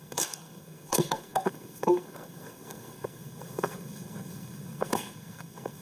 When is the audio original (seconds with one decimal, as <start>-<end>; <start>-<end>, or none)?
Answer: none